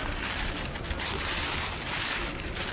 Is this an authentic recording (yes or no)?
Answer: yes